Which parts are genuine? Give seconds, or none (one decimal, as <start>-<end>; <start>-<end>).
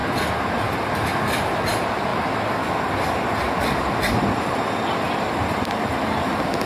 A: 0.0-6.7